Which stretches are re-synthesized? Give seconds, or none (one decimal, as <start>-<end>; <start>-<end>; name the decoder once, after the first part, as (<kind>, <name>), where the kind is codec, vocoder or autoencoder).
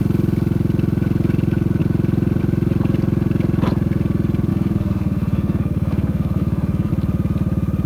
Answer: 4.5-6.9 (codec, SNAC)